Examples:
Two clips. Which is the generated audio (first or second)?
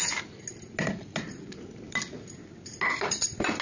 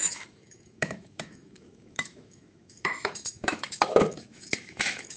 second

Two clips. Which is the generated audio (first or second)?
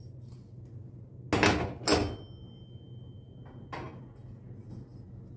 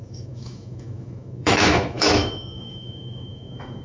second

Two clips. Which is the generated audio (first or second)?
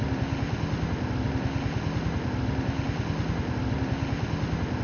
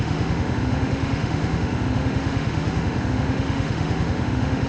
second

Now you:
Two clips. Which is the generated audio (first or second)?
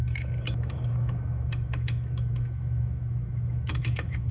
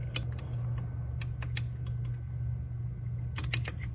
first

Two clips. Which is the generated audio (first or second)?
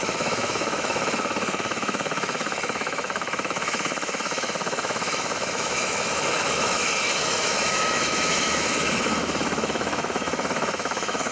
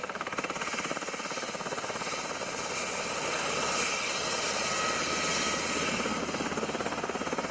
first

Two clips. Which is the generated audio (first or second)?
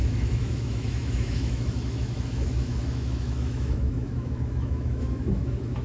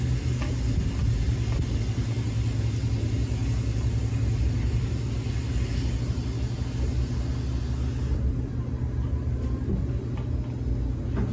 first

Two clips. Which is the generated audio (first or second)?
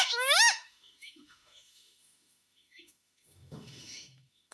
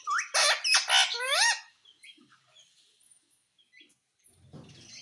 first